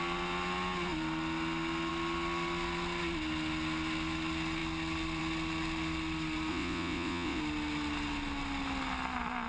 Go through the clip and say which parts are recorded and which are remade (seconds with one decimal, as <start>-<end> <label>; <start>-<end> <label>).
0.0-6.5 recorded; 6.5-7.4 remade; 7.4-9.5 recorded